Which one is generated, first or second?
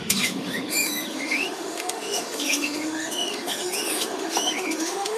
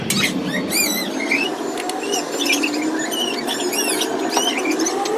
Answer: first